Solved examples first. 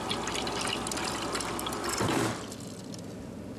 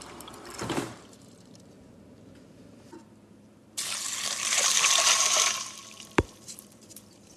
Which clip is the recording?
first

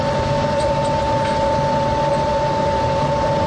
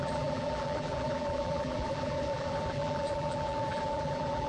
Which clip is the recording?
first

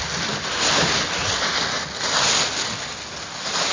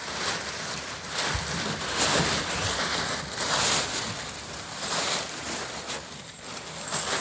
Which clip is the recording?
first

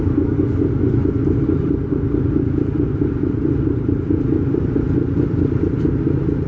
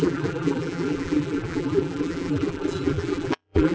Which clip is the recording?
first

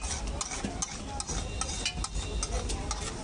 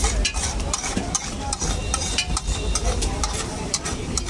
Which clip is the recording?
first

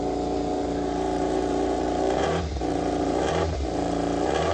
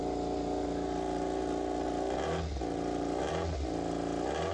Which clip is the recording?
second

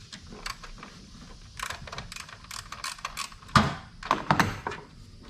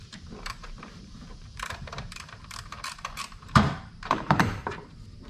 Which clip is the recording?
first